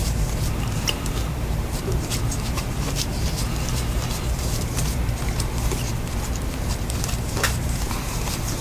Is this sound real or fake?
fake